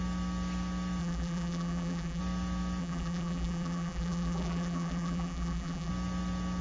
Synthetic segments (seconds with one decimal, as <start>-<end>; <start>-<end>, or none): 1.0-2.2; 2.8-5.9